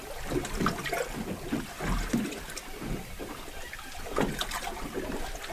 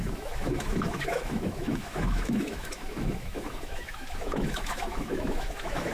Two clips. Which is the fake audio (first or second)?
second